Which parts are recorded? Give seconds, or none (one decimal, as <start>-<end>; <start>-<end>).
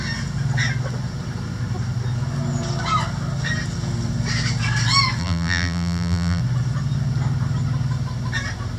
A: 0.0-5.2; 6.4-8.8